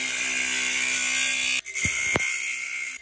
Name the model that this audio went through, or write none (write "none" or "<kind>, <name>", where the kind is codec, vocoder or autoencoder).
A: none